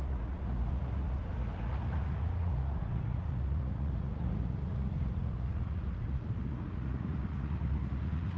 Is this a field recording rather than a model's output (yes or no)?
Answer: no